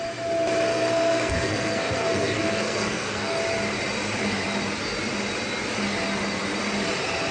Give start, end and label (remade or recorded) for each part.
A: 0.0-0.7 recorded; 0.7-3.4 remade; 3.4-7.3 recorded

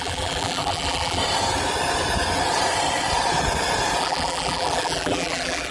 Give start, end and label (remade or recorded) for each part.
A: 0.0-1.2 remade; 1.2-4.0 recorded; 4.0-5.7 remade

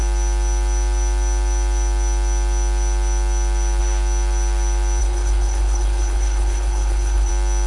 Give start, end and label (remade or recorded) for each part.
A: 0.0-5.0 recorded; 5.0-7.3 remade; 7.3-7.7 recorded

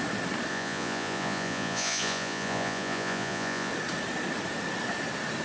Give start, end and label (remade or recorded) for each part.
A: 0.0-0.5 recorded; 0.5-3.7 remade; 3.7-5.4 recorded

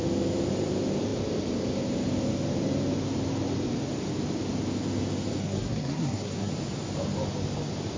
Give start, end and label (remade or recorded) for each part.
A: 0.0-5.4 recorded; 5.4-6.5 remade; 6.5-8.0 recorded

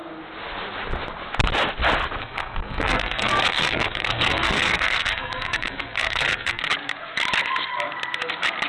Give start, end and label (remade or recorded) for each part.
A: 0.0-2.2 recorded; 2.2-6.6 remade; 6.6-8.7 recorded

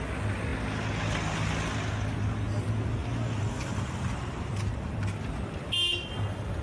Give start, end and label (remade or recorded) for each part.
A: 0.0-6.6 recorded

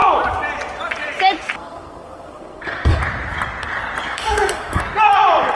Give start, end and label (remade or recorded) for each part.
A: 0.0-1.6 recorded; 1.6-3.0 remade; 3.0-4.1 recorded; 4.1-4.8 remade; 4.8-5.6 recorded